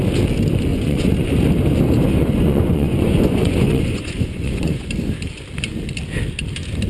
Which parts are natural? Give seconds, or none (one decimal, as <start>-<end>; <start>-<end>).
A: 0.0-0.7; 1.3-2.2; 4.9-6.9